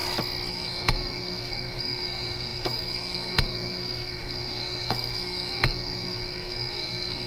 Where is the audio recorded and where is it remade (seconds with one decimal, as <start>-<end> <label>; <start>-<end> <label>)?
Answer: 0.0-0.5 recorded; 0.5-7.3 remade